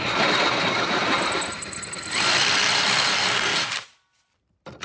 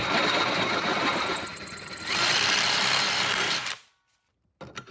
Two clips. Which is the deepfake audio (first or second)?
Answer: first